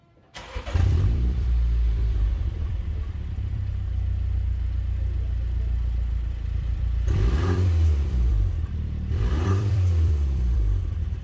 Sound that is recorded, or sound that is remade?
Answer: remade